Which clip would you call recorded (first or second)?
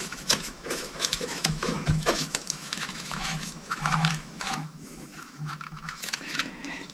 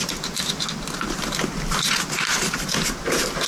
second